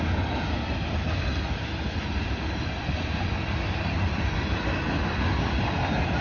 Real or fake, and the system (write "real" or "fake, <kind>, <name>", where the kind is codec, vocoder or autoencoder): real